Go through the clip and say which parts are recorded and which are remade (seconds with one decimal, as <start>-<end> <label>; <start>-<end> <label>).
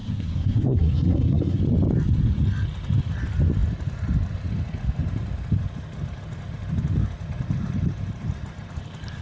0.0-1.6 remade; 1.6-9.2 recorded